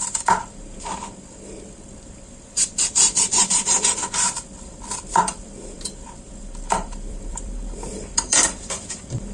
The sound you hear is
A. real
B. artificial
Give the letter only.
B